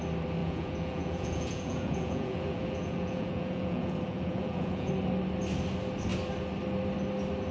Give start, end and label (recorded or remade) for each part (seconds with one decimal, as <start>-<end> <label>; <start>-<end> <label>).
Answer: 0.0-0.4 recorded; 0.4-4.9 remade; 4.9-7.5 recorded